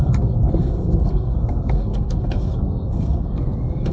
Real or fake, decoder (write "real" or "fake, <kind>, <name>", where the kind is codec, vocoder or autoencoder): fake, codec, SNAC